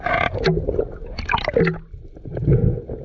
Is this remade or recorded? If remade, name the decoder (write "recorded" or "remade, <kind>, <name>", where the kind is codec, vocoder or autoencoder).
recorded